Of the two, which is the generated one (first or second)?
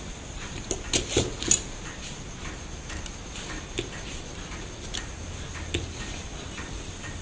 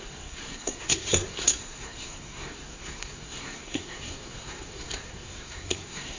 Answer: second